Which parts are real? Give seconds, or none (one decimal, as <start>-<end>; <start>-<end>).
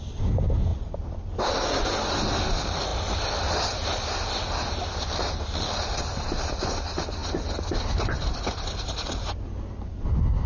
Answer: 0.0-10.5